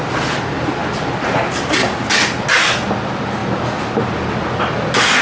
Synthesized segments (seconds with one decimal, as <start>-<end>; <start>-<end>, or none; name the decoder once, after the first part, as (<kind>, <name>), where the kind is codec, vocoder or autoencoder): none